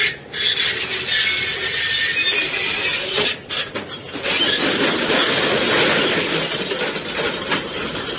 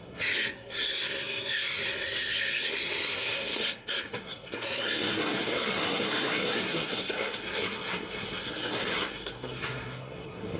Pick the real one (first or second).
first